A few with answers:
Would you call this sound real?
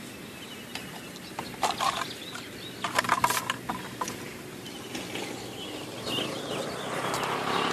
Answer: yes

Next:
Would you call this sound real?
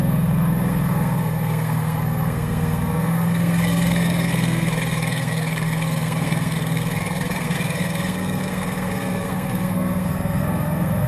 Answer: no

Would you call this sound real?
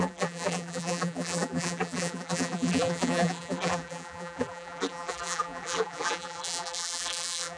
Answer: no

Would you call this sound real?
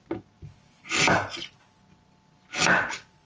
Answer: yes